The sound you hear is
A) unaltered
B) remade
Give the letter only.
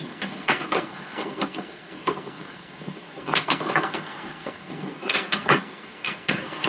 B